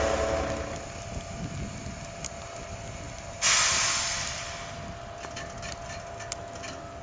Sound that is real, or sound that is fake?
real